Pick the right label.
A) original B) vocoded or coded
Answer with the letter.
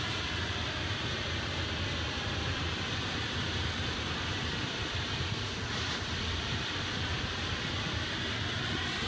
B